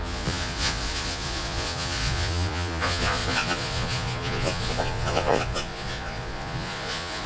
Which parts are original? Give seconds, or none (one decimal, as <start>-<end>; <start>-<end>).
none